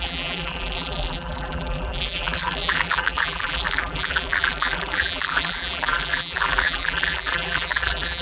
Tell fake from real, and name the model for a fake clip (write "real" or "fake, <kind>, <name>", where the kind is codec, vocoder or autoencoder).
fake, vocoder, BigVGAN v2